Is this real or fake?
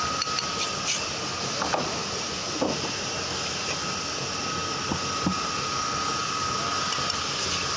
real